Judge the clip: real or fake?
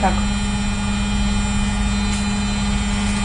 real